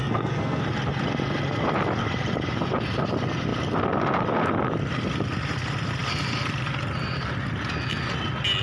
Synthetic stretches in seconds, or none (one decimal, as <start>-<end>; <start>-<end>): 0.0-0.6